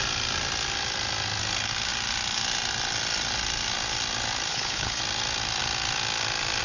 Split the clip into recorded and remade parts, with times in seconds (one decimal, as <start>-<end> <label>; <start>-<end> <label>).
0.0-4.5 recorded; 4.5-5.0 remade; 5.0-6.6 recorded